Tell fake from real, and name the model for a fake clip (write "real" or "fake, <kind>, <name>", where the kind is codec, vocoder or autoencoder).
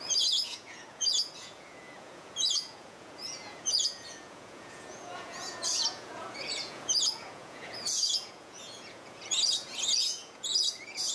fake, vocoder, Vocos